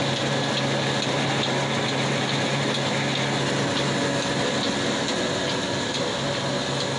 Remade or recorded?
recorded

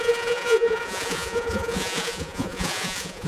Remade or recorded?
remade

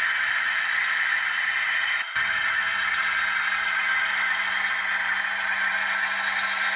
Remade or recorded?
recorded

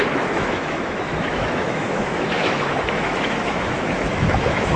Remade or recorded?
remade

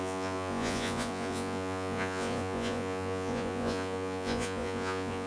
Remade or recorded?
remade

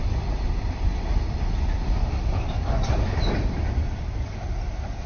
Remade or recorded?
recorded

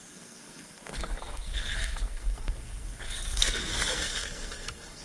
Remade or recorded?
remade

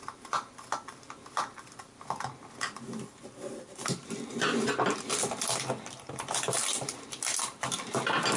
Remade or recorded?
recorded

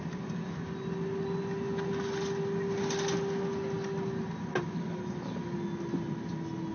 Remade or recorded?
recorded